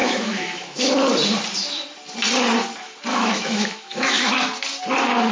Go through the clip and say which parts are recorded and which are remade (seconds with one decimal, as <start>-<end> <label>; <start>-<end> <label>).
0.0-0.9 remade; 0.9-3.1 recorded; 3.1-4.3 remade; 4.3-5.3 recorded